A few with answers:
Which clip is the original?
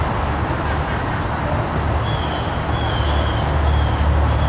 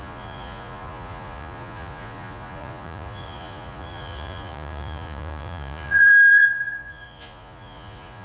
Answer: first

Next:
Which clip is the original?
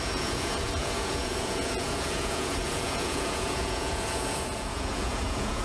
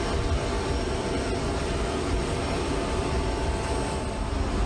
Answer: second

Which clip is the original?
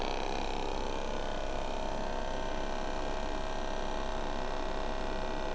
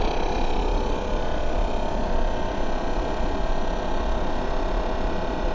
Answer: first